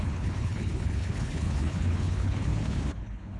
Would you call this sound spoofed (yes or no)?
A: yes